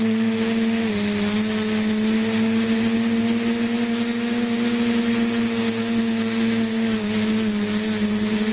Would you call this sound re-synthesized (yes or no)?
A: no